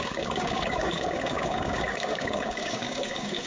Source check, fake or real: fake